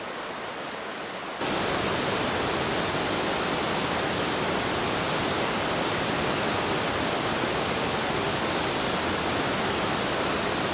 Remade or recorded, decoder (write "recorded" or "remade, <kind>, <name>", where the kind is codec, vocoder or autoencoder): recorded